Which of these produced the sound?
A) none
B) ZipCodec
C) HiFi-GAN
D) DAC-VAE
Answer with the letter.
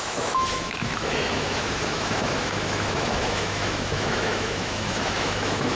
D